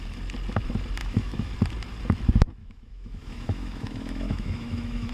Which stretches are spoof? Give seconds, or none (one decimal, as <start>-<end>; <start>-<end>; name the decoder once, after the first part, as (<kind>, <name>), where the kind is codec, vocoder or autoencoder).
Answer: 1.0-1.5 (autoencoder, DAC-VAE); 2.6-5.1